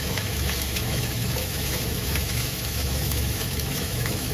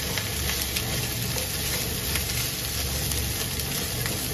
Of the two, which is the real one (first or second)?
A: second